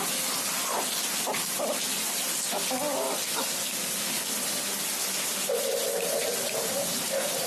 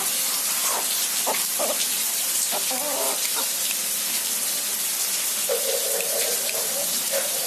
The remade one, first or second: second